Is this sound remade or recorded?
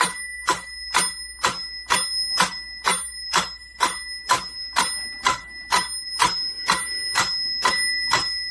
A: recorded